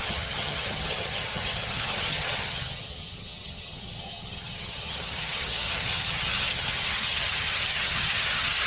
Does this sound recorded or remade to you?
remade